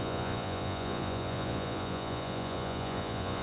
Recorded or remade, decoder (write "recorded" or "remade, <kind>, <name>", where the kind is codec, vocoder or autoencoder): remade, vocoder, Vocos